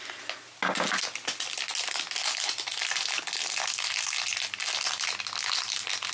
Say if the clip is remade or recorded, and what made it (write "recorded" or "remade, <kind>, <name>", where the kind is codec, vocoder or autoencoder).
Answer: recorded